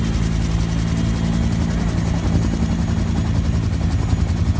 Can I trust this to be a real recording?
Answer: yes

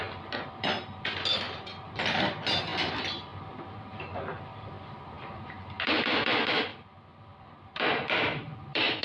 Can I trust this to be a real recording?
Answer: no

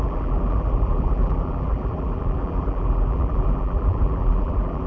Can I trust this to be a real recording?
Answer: no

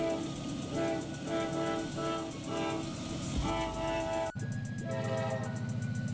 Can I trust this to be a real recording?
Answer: yes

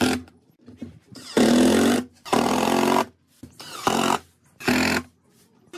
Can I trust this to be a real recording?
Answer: yes